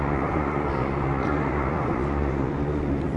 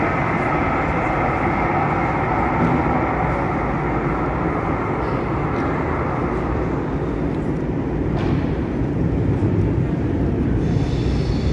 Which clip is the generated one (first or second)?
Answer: first